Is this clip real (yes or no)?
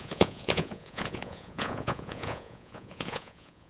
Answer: no